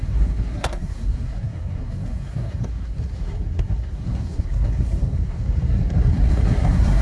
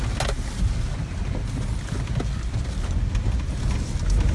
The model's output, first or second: first